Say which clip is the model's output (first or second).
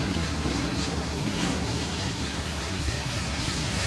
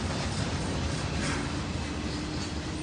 first